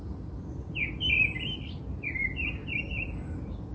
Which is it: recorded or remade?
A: recorded